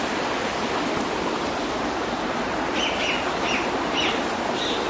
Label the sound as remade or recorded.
recorded